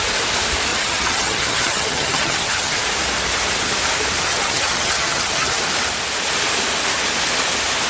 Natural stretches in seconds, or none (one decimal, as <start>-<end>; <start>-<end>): 0.0-0.7; 2.8-4.2; 5.6-7.9